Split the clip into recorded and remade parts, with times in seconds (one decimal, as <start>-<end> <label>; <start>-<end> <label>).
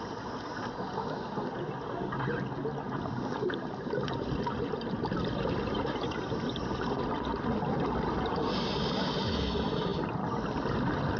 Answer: 0.0-11.2 recorded